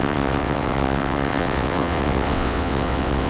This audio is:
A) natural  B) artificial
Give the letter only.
B